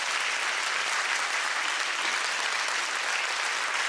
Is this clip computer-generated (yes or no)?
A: no